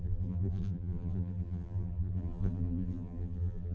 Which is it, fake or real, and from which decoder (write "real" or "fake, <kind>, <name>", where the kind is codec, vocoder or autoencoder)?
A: fake, vocoder, BigVGAN v2